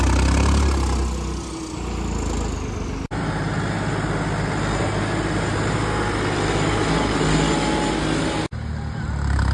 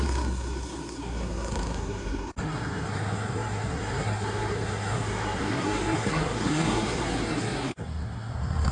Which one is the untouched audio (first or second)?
first